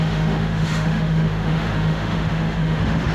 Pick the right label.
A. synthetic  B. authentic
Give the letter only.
A